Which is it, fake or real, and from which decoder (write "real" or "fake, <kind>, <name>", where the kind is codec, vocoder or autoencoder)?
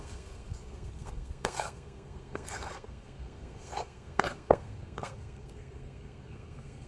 fake, codec, SNAC